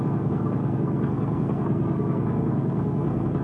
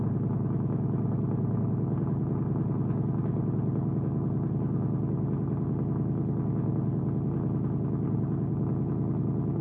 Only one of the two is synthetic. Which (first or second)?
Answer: first